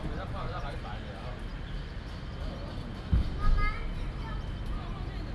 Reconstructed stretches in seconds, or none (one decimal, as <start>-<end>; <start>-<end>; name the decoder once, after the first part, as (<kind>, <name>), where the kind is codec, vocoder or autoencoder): 0.0-0.8 (vocoder, Vocos)